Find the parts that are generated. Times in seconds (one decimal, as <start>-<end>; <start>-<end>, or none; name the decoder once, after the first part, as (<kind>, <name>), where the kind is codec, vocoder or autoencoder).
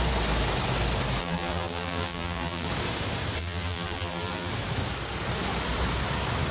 1.2-2.7 (vocoder, BigVGAN v2); 3.4-4.5